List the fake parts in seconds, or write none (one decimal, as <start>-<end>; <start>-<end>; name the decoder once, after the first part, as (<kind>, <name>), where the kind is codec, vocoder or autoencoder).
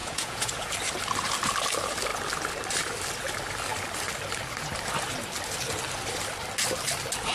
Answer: 0.0-0.7 (vocoder, Vocos)